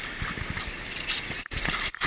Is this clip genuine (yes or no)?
yes